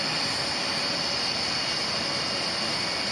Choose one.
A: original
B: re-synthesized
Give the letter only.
A